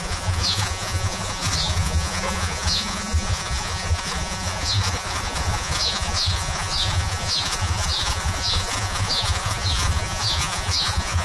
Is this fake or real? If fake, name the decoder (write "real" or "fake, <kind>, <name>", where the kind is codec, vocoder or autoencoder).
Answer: fake, vocoder, Vocos